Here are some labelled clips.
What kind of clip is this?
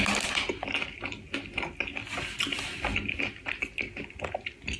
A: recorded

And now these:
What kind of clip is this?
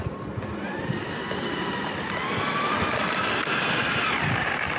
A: remade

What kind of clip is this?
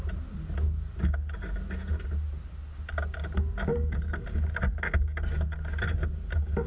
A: recorded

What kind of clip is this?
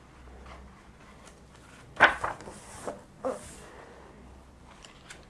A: recorded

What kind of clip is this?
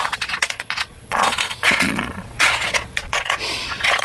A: remade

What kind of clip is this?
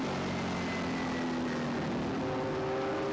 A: recorded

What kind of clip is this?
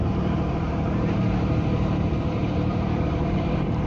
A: remade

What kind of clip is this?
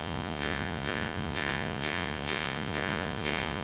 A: remade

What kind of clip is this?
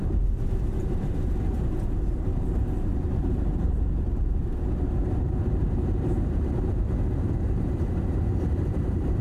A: remade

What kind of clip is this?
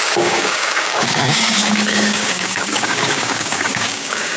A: remade